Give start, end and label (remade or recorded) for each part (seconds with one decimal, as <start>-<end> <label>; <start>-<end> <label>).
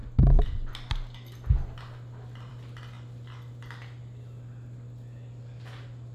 0.0-6.1 recorded